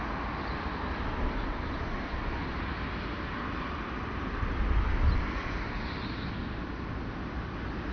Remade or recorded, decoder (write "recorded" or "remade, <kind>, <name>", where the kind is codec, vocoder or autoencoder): recorded